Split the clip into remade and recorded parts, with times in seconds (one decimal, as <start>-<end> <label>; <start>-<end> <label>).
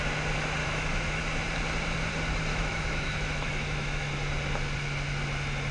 0.0-0.6 recorded; 0.6-1.2 remade; 1.2-2.5 recorded; 2.5-4.1 remade; 4.1-5.7 recorded